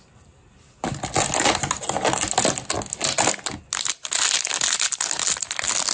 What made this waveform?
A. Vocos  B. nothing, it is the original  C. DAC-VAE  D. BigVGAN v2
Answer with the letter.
B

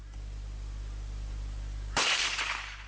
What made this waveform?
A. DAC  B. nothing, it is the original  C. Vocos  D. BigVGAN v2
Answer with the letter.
D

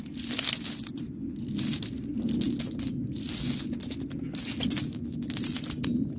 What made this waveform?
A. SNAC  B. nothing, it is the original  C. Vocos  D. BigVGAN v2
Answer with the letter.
B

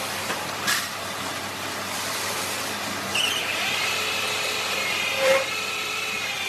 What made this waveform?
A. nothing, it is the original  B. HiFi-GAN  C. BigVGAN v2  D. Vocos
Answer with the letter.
C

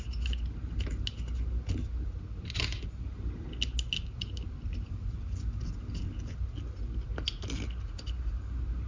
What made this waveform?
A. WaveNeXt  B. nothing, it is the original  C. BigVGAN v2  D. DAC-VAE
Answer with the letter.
B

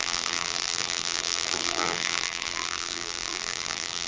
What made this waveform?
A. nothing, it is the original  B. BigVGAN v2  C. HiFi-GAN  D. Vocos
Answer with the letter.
B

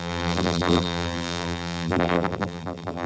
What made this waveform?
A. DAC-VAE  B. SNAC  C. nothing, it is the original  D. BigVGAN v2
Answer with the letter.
D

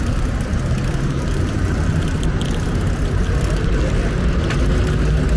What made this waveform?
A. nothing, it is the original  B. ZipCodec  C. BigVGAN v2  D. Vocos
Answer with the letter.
A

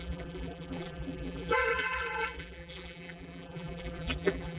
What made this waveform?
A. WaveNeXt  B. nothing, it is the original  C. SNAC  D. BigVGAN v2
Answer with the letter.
D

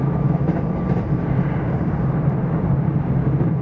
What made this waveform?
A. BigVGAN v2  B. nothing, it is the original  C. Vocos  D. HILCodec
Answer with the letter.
A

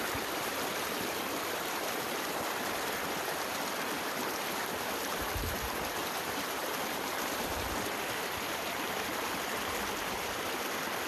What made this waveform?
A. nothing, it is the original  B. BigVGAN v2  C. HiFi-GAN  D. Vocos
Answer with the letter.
B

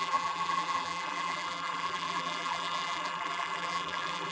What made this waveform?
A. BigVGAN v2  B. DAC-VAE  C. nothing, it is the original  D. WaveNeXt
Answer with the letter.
A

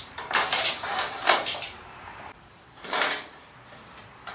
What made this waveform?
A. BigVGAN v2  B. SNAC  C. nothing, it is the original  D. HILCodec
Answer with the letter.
A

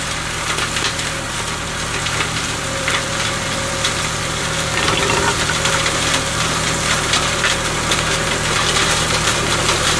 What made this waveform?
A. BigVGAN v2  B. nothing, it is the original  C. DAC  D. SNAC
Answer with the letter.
A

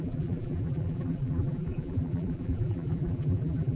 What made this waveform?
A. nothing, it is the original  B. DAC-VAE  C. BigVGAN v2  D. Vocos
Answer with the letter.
C